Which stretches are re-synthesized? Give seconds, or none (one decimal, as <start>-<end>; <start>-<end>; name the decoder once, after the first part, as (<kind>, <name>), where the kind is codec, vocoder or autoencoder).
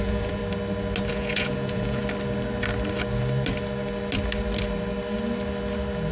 0.0-0.4 (vocoder, Vocos); 1.1-2.0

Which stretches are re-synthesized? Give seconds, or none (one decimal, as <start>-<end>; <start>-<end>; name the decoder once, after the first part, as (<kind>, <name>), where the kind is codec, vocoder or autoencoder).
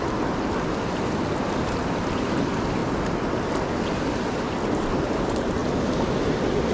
2.8-3.5 (vocoder, BigVGAN v2)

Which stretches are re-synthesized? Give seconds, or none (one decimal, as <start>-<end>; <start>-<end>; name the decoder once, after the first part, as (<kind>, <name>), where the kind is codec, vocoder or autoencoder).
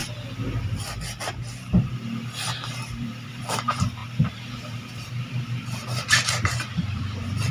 1.6-7.5 (vocoder, BigVGAN v2)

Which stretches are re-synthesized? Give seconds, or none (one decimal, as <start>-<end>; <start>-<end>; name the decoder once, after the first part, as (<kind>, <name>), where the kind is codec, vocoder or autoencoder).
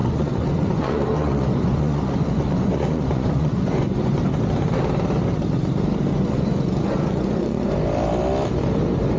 0.0-4.1 (vocoder, Vocos); 6.1-7.7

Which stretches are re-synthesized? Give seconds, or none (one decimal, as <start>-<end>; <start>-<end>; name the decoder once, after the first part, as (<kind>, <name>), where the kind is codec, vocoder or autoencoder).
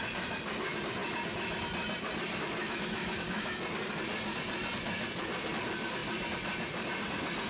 2.6-3.6 (autoencoder, DAC-VAE)